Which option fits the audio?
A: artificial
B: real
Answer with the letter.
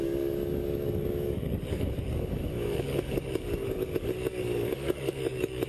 A